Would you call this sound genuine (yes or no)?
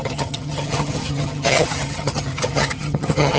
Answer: no